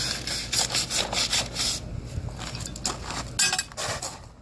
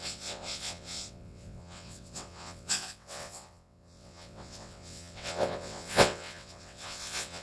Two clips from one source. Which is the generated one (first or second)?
second